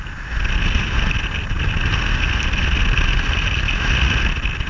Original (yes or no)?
yes